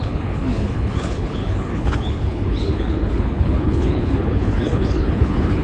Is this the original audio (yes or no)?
no